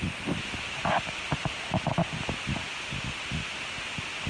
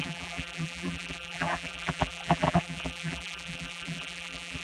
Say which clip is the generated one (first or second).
second